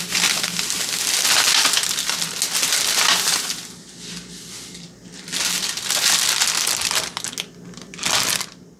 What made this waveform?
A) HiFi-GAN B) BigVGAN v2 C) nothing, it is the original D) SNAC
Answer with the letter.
C